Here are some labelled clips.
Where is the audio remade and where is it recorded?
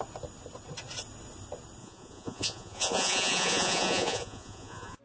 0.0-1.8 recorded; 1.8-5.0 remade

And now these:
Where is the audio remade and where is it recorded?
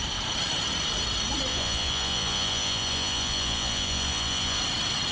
0.0-1.5 recorded; 1.5-4.6 remade; 4.6-5.1 recorded